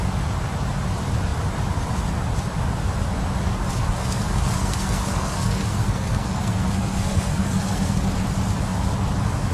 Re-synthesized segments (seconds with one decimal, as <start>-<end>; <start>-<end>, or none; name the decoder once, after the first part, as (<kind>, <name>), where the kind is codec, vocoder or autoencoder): 4.0-8.0 (codec, SNAC)